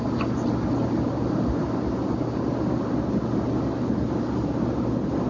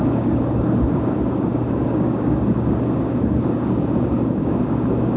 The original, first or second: first